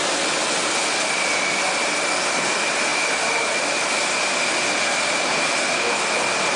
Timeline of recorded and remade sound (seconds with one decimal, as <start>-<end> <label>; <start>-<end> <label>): 0.0-6.6 recorded